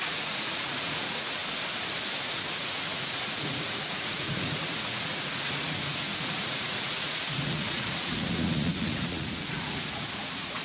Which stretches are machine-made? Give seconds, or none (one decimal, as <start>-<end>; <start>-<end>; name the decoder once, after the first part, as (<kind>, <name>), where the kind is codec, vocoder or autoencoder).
0.0-1.4 (vocoder, Vocos); 2.2-10.6